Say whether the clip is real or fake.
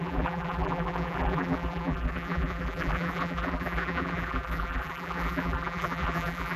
fake